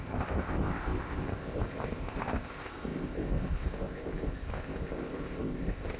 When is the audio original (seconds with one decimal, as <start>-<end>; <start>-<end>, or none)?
none